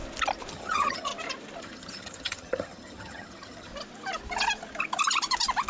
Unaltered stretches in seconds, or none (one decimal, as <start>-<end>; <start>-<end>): 0.0-0.5; 1.1-1.6; 3.7-5.7